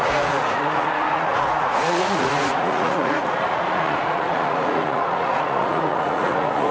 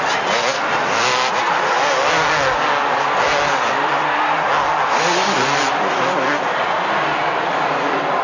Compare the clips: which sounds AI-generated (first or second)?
first